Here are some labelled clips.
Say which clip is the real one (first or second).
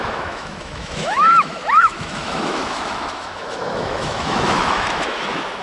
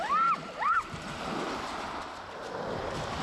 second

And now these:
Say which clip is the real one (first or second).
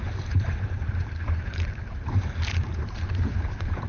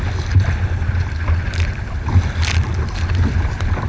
second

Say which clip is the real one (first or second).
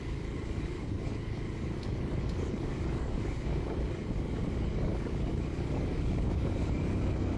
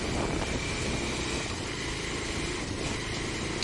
second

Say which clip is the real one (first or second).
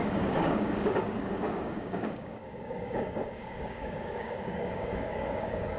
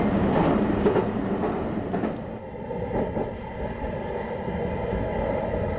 second